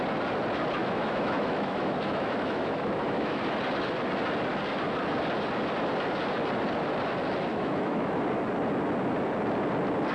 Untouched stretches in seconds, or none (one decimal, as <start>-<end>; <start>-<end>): 0.0-0.8; 3.4-7.5; 8.2-10.1